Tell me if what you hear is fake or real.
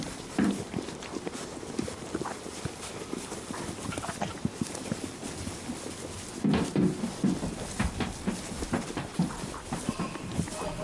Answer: real